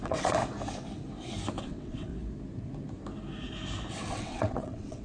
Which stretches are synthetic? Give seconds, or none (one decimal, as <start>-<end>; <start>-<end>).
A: 0.0-0.4; 1.6-2.1; 3.9-5.0